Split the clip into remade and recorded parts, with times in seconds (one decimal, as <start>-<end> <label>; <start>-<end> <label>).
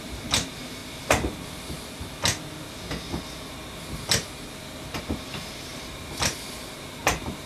0.0-0.8 remade; 0.8-5.0 recorded; 5.0-7.5 remade